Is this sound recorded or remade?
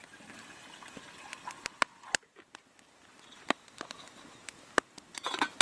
recorded